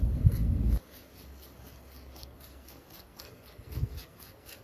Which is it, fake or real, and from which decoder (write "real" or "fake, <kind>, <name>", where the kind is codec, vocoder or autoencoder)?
fake, codec, SNAC